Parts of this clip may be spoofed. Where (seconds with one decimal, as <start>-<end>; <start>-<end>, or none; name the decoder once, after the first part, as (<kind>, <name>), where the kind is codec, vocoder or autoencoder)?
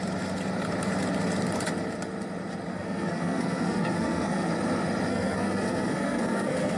2.7-4.5 (codec, SNAC); 5.1-6.8